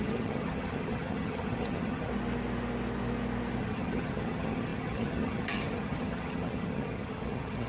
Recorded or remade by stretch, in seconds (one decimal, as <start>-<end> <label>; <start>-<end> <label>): 0.0-2.1 remade; 2.1-3.6 recorded; 3.6-7.7 remade